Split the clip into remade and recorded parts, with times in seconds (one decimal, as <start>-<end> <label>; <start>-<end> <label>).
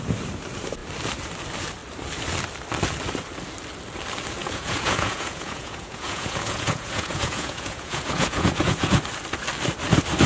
0.0-4.4 recorded; 4.4-9.0 remade; 9.0-10.3 recorded